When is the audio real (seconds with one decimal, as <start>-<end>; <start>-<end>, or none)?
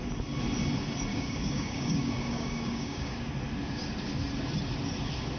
0.0-1.1; 3.3-5.4